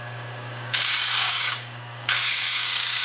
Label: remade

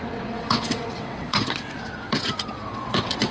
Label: remade